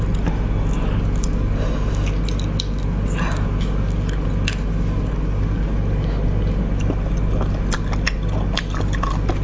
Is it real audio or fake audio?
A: real